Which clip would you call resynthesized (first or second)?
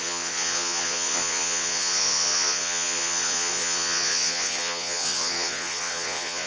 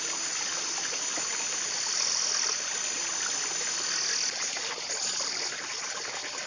first